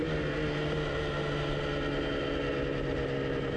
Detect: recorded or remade recorded